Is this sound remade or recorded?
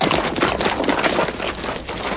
recorded